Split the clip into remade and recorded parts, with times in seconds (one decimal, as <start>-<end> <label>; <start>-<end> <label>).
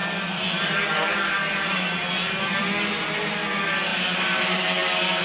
0.0-5.2 recorded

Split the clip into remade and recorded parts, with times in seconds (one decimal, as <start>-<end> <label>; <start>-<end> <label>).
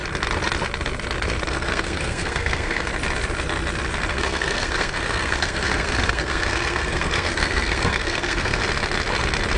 0.0-1.5 recorded; 1.5-2.9 remade; 2.9-4.1 recorded; 4.1-8.6 remade; 8.6-9.6 recorded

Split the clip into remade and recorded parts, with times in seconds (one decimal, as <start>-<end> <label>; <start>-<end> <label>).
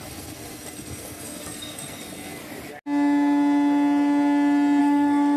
0.0-2.4 remade; 2.4-4.8 recorded; 4.8-5.4 remade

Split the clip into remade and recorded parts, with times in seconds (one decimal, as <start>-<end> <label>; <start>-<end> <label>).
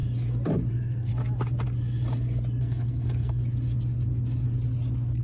0.0-0.7 recorded; 0.7-1.1 remade; 1.1-2.6 recorded; 2.6-3.4 remade; 3.4-5.2 recorded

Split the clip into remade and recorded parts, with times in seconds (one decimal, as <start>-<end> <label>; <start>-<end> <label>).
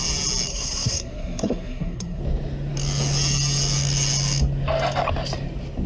0.0-0.5 recorded; 0.5-2.2 remade; 2.2-5.9 recorded